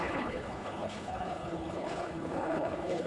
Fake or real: fake